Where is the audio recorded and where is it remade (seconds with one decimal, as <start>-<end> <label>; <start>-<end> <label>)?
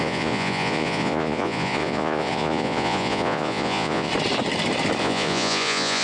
0.0-4.1 remade; 4.1-5.0 recorded; 5.0-6.0 remade